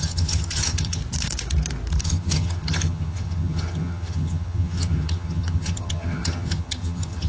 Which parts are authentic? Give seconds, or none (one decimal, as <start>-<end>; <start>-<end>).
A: 1.0-2.0

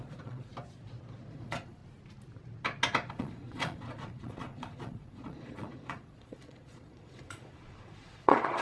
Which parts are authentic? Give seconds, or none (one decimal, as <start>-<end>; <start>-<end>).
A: 0.5-1.3; 1.8-3.1